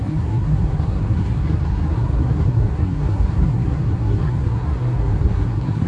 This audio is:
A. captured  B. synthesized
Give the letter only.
B